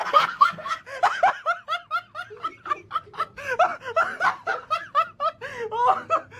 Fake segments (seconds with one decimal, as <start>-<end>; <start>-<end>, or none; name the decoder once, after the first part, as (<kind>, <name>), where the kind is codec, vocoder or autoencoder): 0.0-0.8 (codec, SNAC)